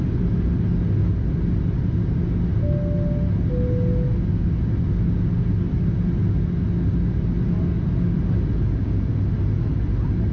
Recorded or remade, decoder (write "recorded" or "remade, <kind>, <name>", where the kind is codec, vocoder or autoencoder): recorded